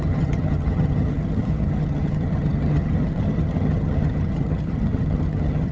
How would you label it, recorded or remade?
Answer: remade